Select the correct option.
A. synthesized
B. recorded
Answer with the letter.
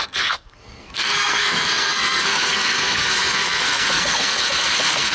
A